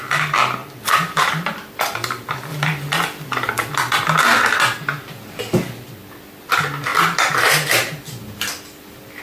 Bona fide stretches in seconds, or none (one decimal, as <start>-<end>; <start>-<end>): 0.0-0.6; 1.5-2.5; 4.2-6.9; 7.5-9.2